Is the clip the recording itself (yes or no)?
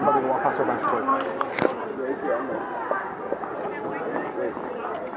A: yes